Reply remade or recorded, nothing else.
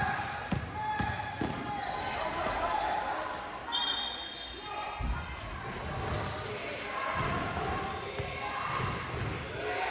recorded